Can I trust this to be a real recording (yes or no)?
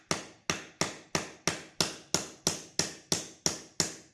yes